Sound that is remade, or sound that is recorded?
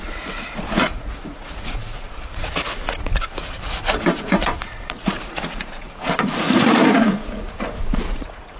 remade